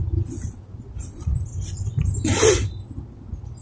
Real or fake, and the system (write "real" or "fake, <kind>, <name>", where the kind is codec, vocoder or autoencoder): real